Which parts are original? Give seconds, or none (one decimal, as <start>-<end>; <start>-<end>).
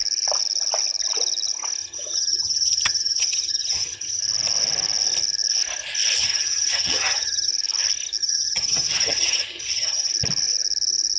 0.0-1.8; 4.2-6.2; 7.5-8.2; 10.1-11.2